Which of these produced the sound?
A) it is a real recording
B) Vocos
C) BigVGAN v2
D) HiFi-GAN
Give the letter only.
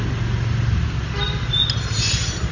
A